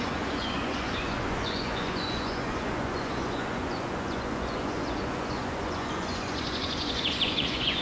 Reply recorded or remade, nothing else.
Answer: remade